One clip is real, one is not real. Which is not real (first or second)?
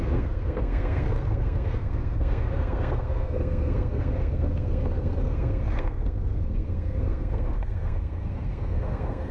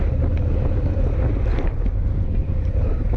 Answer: first